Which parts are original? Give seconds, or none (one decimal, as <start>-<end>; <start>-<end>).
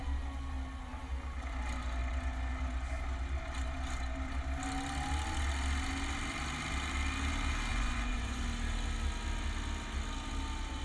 0.0-7.7; 8.4-10.8